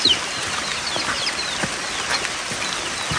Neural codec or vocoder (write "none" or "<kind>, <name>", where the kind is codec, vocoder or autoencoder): none